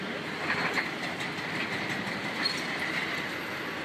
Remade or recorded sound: recorded